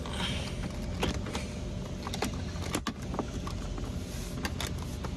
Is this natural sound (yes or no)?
yes